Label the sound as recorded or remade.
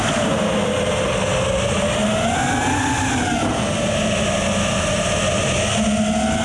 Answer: recorded